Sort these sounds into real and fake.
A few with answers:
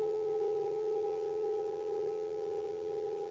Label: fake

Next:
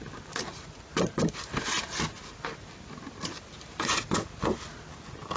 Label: real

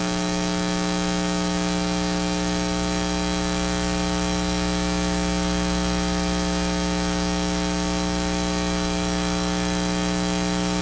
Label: fake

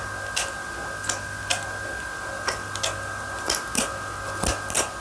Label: real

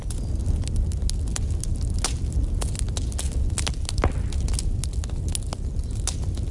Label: real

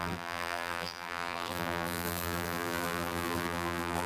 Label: fake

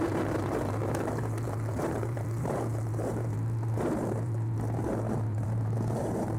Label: fake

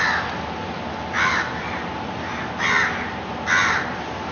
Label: real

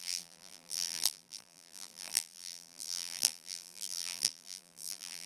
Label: fake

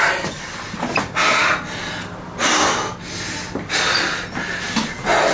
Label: real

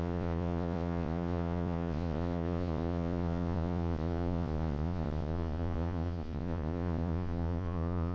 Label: fake